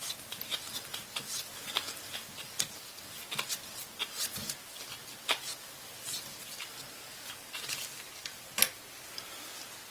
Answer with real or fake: real